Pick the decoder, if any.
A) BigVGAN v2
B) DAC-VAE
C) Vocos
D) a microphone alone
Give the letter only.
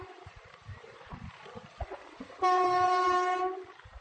A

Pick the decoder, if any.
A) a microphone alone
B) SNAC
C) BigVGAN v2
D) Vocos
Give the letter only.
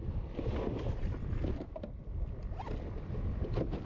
A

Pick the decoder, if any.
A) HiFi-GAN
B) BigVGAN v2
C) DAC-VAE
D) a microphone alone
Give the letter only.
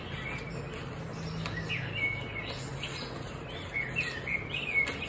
D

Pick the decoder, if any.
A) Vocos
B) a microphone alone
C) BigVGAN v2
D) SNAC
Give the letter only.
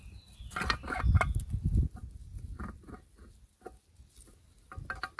B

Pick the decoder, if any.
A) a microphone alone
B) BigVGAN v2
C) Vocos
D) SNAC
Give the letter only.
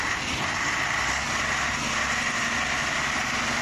A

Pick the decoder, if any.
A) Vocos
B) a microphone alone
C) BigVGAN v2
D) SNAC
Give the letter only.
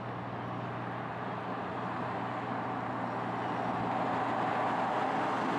B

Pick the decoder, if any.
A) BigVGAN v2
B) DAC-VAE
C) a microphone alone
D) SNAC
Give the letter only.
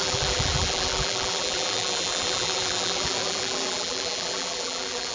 A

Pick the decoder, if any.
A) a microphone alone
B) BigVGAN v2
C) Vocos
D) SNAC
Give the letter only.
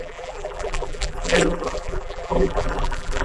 B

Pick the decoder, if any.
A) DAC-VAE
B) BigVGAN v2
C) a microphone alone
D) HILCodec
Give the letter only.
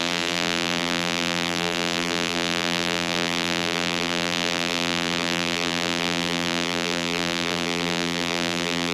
B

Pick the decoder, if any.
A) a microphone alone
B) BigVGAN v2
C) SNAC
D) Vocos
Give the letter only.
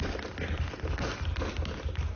A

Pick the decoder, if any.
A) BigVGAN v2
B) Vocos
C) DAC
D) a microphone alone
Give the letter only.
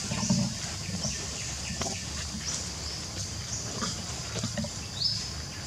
D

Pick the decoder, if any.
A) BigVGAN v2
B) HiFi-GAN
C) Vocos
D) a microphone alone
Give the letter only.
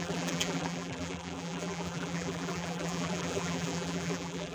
A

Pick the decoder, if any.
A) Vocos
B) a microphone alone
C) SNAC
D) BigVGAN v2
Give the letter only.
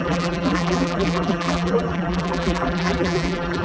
D